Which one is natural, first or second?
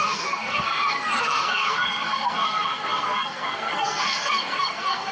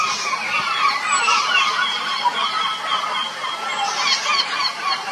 second